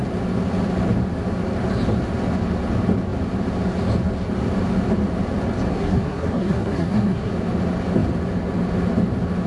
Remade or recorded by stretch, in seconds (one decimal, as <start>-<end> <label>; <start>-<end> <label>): 0.0-5.7 recorded; 5.7-7.3 remade; 7.3-9.5 recorded